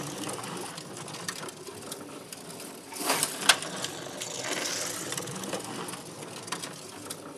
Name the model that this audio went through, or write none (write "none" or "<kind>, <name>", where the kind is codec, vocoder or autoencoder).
none